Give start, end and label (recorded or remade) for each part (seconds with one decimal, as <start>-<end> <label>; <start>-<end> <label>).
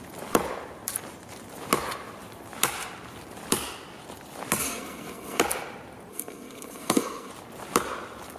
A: 0.0-4.6 recorded; 4.6-5.4 remade; 5.4-6.1 recorded; 6.1-7.3 remade; 7.3-8.4 recorded